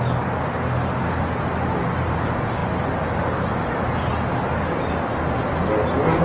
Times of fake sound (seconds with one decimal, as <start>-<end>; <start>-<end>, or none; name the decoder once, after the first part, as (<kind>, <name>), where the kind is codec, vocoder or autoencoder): none